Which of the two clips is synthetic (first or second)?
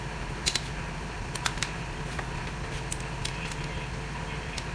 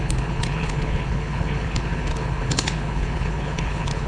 second